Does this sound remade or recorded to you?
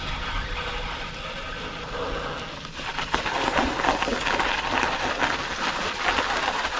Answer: recorded